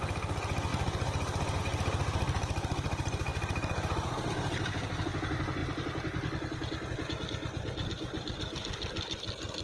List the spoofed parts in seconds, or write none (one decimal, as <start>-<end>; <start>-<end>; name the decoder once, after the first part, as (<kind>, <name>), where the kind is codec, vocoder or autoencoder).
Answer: none